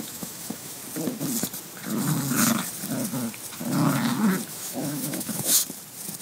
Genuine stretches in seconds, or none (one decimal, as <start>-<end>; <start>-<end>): 0.8-4.5; 5.6-6.2